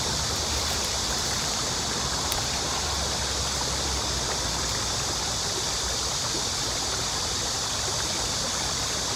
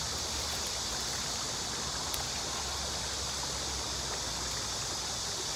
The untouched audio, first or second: second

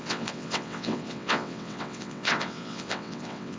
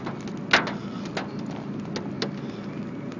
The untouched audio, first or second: second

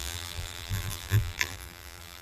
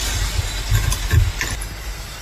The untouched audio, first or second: second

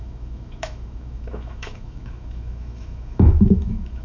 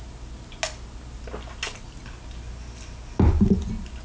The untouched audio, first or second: second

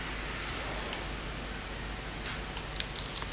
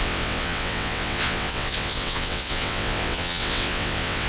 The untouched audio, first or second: first